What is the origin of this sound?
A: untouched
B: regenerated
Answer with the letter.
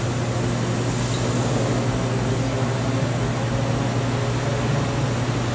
A